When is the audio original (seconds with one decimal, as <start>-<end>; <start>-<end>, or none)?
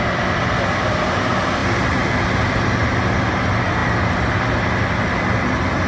0.0-5.9